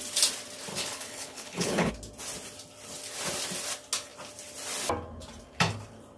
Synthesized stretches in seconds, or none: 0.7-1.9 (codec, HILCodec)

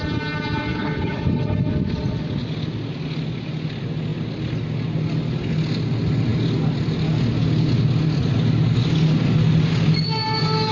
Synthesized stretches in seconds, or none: 0.7-1.7 (codec, HILCodec)

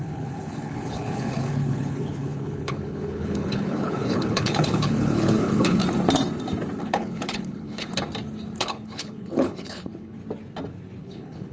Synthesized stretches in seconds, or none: 0.0-5.8 (codec, HILCodec); 6.8-7.9; 8.6-10.2; 11.0-11.5

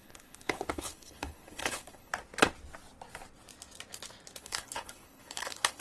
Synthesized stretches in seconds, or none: 0.0-2.1 (codec, HILCodec); 4.4-5.8

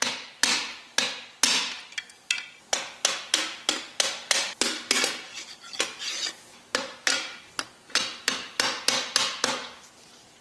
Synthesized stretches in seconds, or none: none

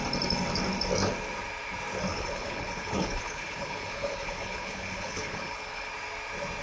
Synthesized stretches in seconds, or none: 2.1-5.9 (codec, HILCodec)